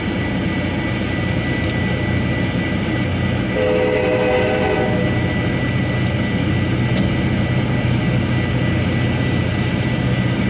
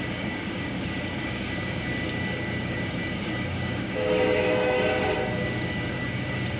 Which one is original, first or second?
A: first